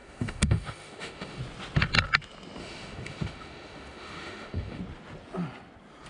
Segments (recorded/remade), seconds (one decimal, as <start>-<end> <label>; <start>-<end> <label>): 0.0-1.4 remade; 1.4-2.6 recorded; 2.6-4.8 remade; 4.8-6.1 recorded